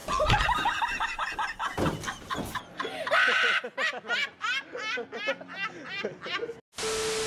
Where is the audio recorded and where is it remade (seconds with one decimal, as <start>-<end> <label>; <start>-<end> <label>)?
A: 0.0-7.3 recorded